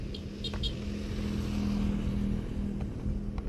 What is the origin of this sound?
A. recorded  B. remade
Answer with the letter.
A